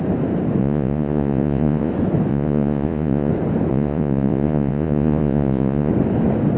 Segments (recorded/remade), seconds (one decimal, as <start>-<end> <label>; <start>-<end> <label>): 0.0-0.6 recorded; 0.6-1.9 remade; 1.9-2.3 recorded; 2.3-3.3 remade; 3.3-3.7 recorded; 3.7-5.9 remade; 5.9-6.6 recorded